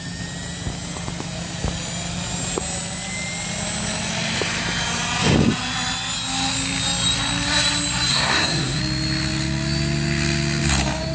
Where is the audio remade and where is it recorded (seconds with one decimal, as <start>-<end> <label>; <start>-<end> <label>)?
0.0-8.1 recorded; 8.1-8.8 remade; 8.8-11.1 recorded